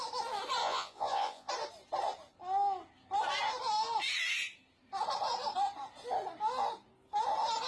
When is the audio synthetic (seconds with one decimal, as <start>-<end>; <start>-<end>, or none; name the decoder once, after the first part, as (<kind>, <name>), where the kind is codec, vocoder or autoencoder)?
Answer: 0.6-1.5 (vocoder, Vocos)

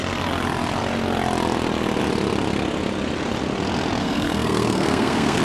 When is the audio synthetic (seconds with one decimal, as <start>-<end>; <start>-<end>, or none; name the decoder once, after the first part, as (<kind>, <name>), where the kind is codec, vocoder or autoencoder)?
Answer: 4.0-5.4 (codec, SNAC)

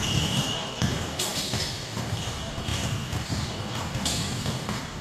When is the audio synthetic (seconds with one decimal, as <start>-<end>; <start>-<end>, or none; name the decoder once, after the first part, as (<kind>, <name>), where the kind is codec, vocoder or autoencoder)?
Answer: 0.0-5.0 (codec, DAC)

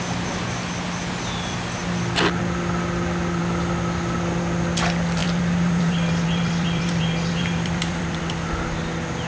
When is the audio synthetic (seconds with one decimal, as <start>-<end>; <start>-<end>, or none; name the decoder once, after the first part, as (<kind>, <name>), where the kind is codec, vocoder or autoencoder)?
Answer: 5.2-8.2 (vocoder, BigVGAN v2)